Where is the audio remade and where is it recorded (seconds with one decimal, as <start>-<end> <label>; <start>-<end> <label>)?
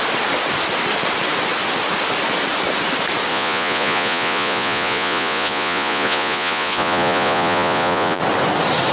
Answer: 0.0-3.3 recorded; 3.3-8.2 remade; 8.2-8.9 recorded